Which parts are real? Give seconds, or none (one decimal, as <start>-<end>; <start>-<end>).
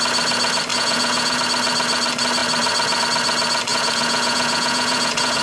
0.0-0.7; 1.4-3.7